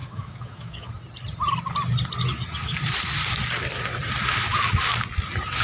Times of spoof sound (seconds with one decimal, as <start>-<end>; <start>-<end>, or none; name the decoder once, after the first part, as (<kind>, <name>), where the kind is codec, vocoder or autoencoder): 0.0-0.9 (autoencoder, DAC-VAE)